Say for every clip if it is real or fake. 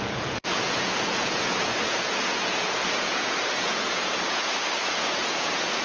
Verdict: fake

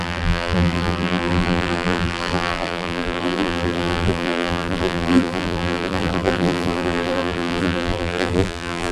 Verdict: fake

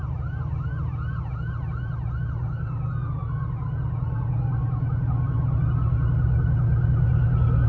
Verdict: real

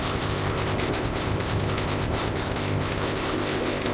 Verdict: fake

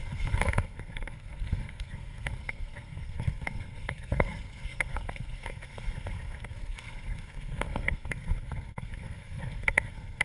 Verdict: fake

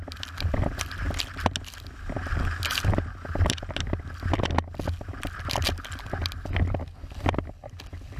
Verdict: real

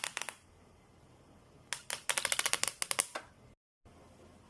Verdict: real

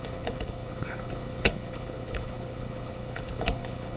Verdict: fake